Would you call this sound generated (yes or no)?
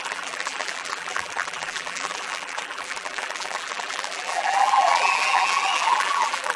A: yes